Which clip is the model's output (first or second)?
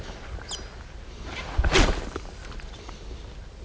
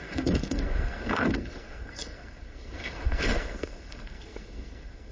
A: second